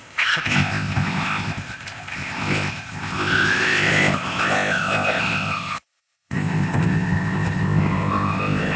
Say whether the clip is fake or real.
fake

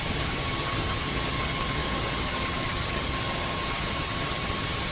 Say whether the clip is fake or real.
fake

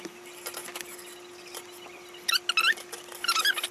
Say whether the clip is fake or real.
real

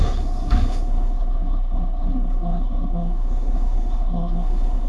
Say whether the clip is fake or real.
fake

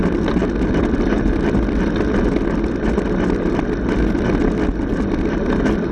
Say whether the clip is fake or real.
real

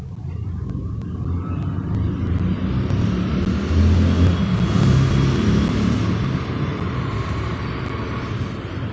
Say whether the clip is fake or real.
real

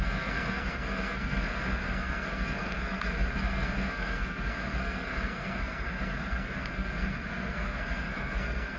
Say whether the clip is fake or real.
fake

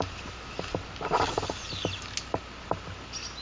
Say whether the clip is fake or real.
real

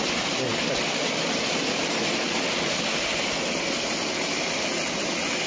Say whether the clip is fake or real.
real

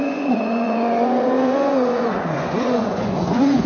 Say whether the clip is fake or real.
fake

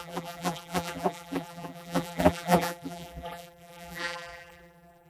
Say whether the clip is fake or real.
fake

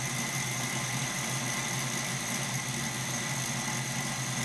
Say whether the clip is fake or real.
real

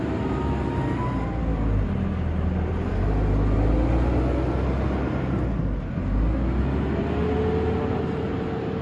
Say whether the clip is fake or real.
real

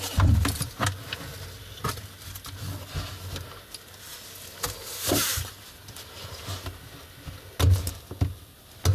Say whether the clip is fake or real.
real